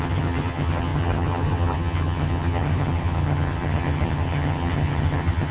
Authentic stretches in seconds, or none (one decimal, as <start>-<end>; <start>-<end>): none